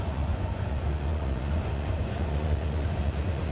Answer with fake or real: fake